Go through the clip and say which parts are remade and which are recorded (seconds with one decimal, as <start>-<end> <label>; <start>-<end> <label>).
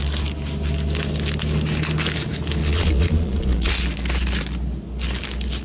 0.0-2.6 recorded; 2.6-3.7 remade; 3.7-5.6 recorded